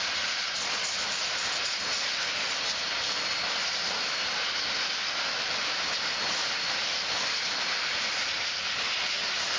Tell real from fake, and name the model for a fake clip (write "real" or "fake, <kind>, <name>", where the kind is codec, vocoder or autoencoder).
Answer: real